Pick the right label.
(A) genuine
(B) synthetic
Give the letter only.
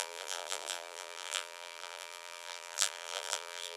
B